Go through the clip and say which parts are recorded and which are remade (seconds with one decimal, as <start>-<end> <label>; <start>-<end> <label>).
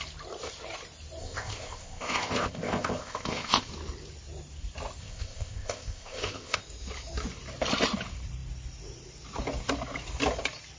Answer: 0.0-1.2 recorded; 1.2-3.7 remade; 3.7-5.0 recorded; 5.0-6.6 remade; 6.6-10.8 recorded